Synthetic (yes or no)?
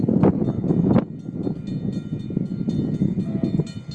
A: no